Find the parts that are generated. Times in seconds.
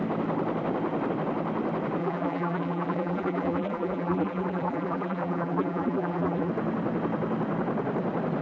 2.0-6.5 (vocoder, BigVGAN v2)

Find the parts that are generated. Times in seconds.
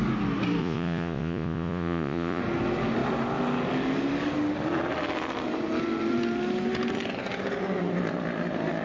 0.6-2.4 (vocoder, Vocos)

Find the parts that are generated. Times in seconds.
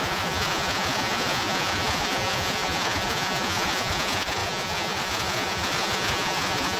0.0-6.8 (vocoder, Vocos)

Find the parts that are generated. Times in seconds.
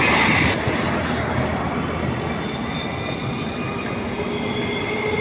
none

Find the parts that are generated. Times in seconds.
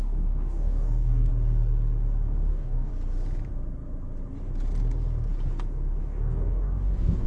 0.0-1.3 (codec, DAC); 2.5-2.9; 6.0-7.3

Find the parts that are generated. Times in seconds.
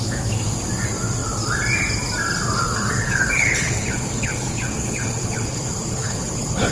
2.6-6.7 (codec, HILCodec)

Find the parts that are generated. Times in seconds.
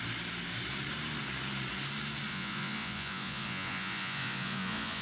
2.3-5.0 (vocoder, Vocos)